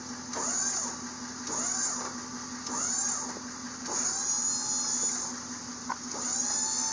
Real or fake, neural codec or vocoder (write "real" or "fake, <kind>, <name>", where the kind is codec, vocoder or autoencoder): real